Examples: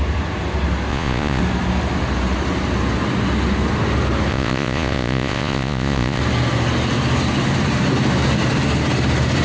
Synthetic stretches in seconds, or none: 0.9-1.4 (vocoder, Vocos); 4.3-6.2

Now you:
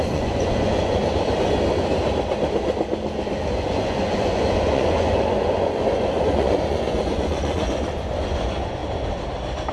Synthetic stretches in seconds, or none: 0.0-1.0 (vocoder, Vocos); 3.5-8.8

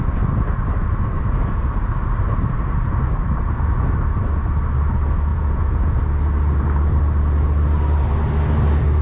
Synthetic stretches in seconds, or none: 5.3-6.0 (vocoder, Vocos)

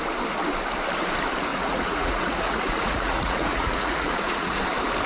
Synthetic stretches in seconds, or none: 1.5-4.6 (vocoder, Vocos)

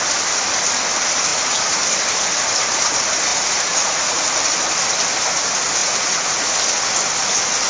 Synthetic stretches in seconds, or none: 1.3-1.8 (vocoder, Vocos); 3.3-4.3; 5.8-6.5